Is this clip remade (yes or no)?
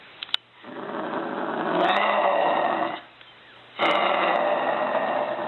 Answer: no